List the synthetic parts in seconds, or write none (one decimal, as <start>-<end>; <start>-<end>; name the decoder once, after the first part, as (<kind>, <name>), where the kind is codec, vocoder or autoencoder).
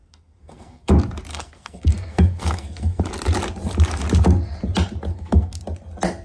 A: 0.0-0.9 (codec, SNAC); 1.3-3.0; 5.1-5.6